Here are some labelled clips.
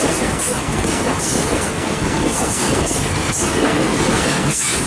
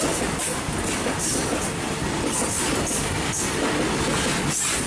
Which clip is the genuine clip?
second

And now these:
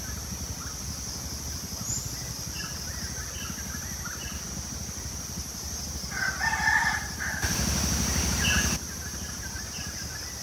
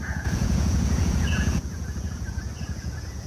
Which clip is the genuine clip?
first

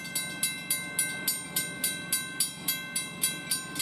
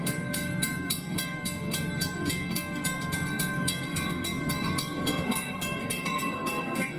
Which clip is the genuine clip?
first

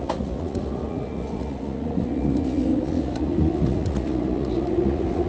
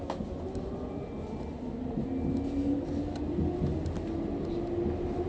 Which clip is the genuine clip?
second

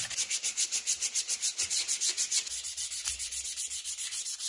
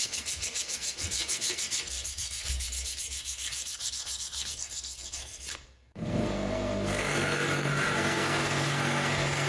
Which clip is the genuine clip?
first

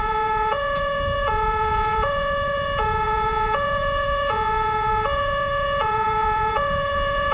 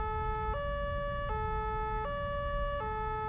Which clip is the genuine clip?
second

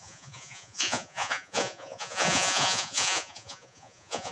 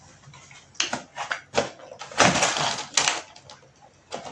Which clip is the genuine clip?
second